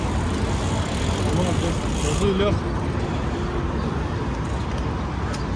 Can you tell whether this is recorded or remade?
recorded